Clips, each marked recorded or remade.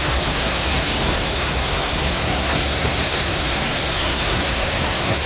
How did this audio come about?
remade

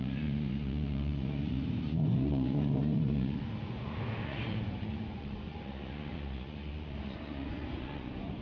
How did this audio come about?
remade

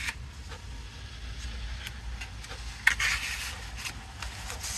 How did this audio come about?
recorded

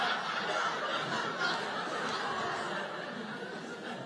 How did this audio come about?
recorded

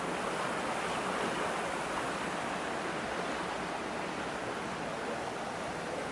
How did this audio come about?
recorded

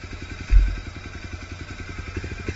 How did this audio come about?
recorded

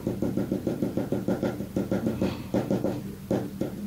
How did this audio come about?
remade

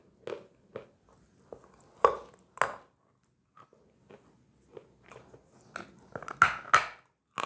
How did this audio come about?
recorded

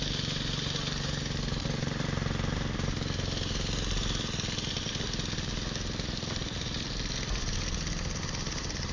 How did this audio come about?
recorded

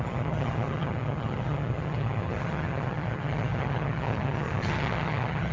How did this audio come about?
remade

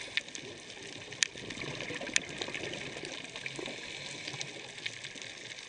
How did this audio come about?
recorded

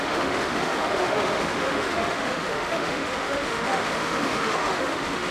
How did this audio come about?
remade